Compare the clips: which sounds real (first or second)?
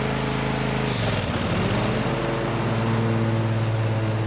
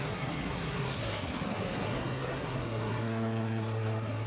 first